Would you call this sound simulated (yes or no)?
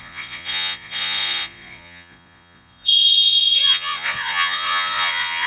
yes